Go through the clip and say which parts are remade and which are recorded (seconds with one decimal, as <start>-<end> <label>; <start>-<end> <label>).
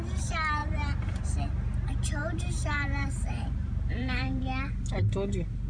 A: 0.0-0.6 recorded; 0.6-1.2 remade; 1.2-2.2 recorded; 2.2-4.4 remade; 4.4-5.7 recorded